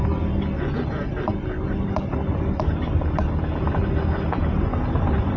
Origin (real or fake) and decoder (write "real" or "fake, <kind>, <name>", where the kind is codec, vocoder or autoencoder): real